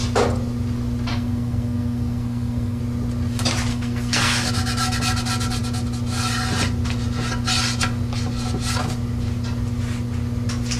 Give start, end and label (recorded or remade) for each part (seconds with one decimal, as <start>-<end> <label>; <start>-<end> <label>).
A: 0.0-1.1 recorded; 1.1-2.8 remade; 2.8-3.7 recorded; 3.7-4.5 remade; 4.5-10.8 recorded